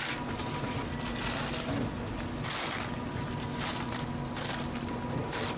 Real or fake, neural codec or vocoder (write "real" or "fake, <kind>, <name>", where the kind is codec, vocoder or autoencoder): real